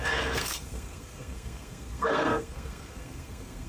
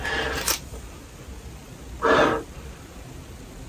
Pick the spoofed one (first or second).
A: first